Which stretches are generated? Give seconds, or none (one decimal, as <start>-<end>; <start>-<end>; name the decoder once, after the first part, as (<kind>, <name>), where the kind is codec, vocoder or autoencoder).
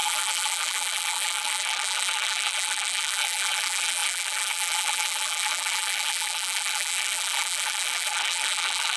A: 0.0-9.0 (vocoder, BigVGAN v2)